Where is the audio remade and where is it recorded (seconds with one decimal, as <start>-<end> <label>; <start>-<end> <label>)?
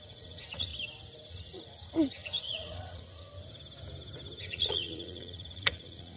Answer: 0.0-0.7 remade; 0.7-1.3 recorded; 1.3-3.3 remade; 3.3-4.4 recorded; 4.4-6.2 remade